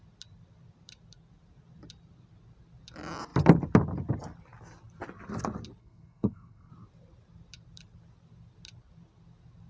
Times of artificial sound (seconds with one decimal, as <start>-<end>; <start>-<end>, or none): 5.8-6.7